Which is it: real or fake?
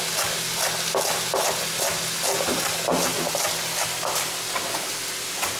real